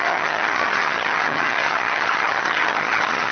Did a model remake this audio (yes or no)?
yes